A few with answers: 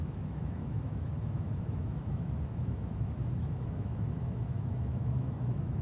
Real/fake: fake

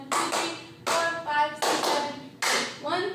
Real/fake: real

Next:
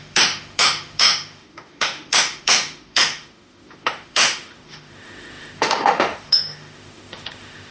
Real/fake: fake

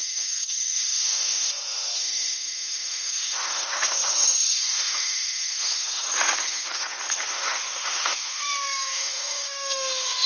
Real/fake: fake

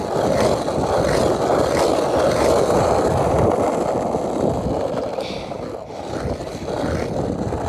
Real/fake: real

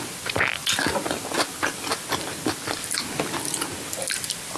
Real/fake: real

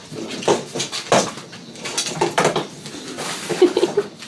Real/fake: real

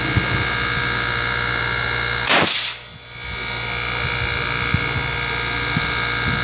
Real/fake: real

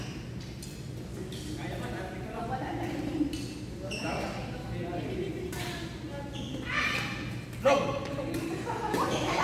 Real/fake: real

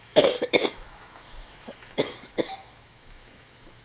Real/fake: fake